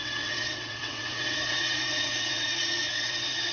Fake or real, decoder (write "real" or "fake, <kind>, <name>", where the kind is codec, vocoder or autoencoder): fake, vocoder, WaveNeXt